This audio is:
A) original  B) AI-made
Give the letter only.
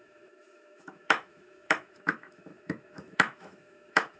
B